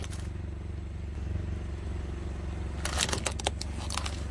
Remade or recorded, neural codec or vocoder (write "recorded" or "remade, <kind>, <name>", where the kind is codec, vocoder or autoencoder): recorded